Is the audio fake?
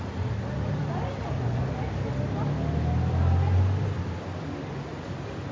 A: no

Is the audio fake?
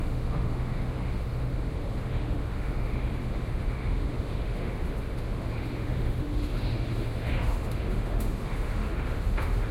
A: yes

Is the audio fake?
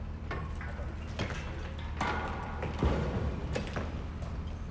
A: no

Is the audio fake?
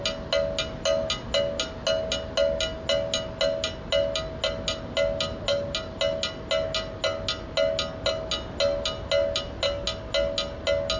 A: no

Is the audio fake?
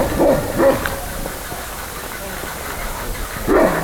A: no